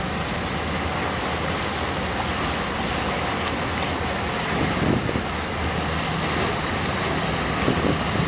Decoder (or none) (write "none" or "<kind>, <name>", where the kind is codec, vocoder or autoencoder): none